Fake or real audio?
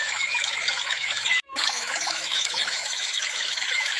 fake